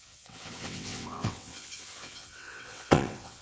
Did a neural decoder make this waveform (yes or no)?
yes